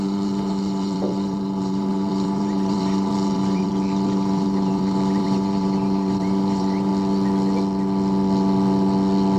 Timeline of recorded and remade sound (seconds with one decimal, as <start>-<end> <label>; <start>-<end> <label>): 0.0-6.9 remade; 6.9-9.4 recorded